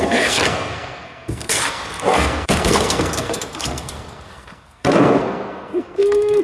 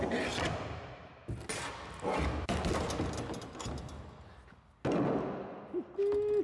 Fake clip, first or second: first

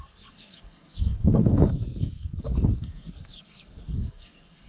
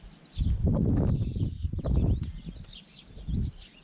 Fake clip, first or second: first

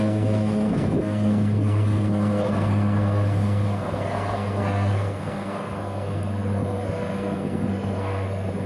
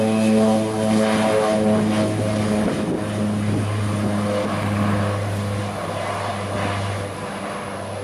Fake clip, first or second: first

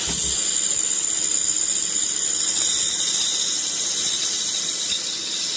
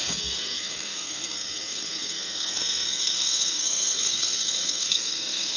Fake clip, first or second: second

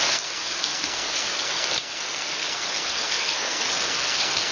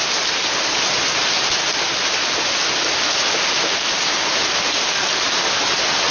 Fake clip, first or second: first